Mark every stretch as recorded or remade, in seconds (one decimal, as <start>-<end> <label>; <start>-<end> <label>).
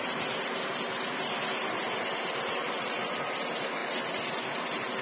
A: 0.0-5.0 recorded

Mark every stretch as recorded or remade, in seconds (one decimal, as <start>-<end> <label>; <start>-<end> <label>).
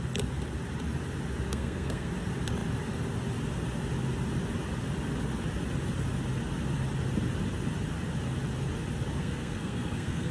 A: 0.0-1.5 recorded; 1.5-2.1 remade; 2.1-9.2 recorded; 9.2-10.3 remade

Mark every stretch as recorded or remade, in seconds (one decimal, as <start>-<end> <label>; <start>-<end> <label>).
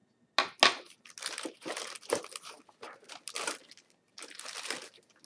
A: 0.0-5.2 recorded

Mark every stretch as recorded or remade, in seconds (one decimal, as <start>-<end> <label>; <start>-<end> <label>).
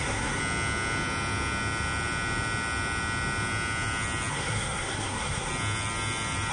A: 0.0-0.4 remade; 0.4-4.3 recorded; 4.3-5.5 remade; 5.5-6.5 recorded